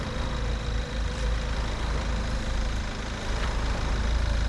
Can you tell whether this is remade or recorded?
recorded